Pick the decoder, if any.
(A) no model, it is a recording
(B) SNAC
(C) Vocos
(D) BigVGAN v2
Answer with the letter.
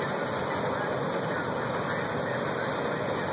A